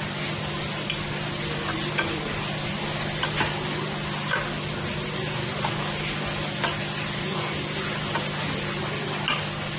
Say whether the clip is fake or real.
real